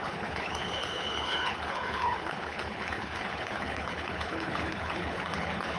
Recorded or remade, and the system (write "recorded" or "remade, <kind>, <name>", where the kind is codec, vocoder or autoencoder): remade, codec, HILCodec